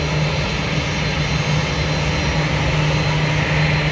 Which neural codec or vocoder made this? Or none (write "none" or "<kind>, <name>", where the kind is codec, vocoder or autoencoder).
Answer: none